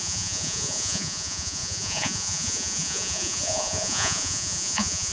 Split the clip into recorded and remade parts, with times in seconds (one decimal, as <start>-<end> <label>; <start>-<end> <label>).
0.0-5.1 remade